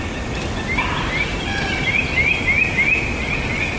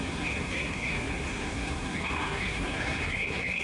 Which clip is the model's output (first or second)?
second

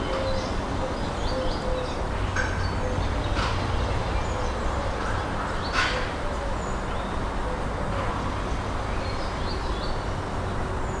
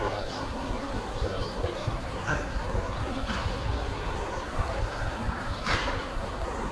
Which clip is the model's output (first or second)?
second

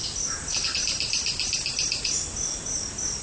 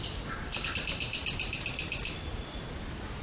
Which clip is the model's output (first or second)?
second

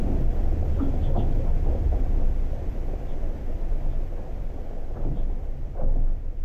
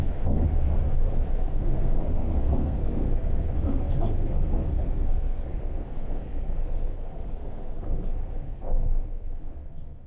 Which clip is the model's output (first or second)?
second